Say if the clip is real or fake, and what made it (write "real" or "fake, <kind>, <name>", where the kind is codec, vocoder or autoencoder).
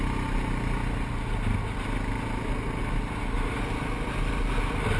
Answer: real